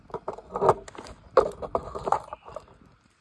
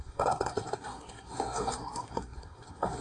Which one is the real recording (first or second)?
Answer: first